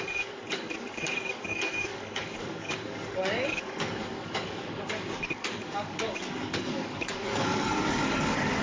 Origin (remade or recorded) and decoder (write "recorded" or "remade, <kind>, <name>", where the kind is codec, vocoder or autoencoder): remade, codec, DAC